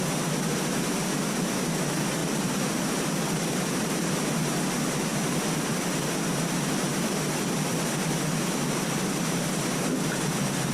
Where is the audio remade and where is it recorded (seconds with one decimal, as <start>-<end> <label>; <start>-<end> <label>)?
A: 0.0-2.2 recorded; 2.2-4.1 remade; 4.1-5.1 recorded; 5.1-5.9 remade; 5.9-6.9 recorded; 6.9-7.9 remade; 7.9-10.7 recorded